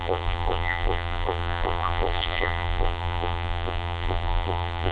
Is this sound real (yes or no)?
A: no